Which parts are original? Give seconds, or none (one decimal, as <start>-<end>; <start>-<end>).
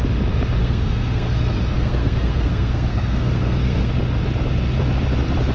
0.0-0.6; 3.9-5.5